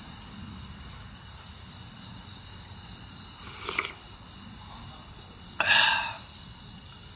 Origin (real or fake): real